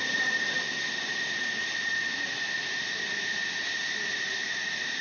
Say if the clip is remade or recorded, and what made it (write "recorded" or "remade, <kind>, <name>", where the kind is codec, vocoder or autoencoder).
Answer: recorded